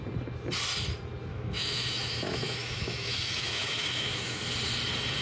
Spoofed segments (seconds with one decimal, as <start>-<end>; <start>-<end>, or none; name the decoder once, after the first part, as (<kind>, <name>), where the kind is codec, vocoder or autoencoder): 1.3-4.4 (autoencoder, DAC-VAE)